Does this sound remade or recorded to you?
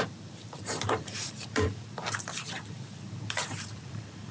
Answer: remade